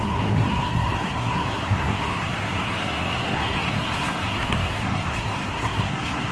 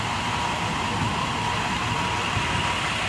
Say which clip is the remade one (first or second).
first